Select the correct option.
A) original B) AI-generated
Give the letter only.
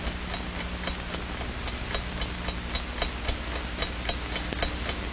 A